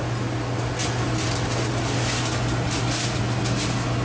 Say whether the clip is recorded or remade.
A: recorded